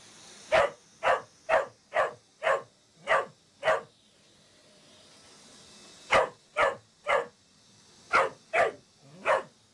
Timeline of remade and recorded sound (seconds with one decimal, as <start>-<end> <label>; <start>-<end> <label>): 0.0-9.7 recorded